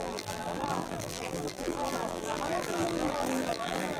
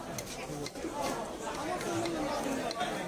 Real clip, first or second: second